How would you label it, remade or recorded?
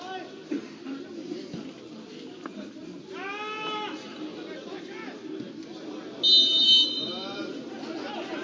recorded